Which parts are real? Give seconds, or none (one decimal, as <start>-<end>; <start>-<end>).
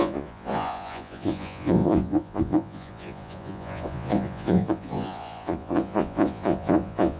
none